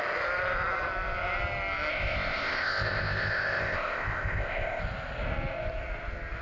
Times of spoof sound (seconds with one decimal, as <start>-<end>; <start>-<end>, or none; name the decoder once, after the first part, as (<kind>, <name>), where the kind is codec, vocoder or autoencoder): 1.9-4.8 (codec, ZipCodec)